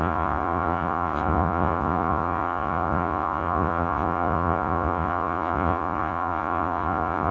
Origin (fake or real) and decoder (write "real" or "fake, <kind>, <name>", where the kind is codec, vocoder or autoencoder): fake, vocoder, Vocos